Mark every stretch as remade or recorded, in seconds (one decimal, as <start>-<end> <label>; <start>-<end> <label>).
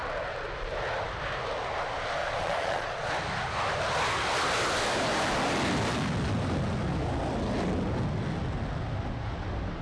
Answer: 0.0-2.2 recorded; 2.2-3.1 remade; 3.1-9.8 recorded